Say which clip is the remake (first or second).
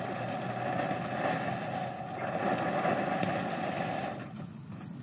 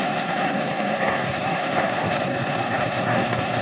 second